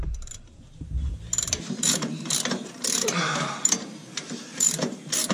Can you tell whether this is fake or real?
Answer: fake